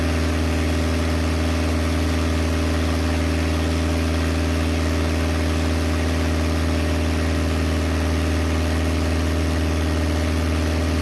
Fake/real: real